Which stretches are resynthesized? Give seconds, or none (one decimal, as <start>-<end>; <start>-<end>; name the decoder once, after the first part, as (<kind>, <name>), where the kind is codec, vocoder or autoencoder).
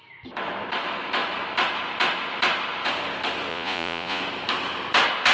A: 3.5-4.2 (vocoder, Vocos)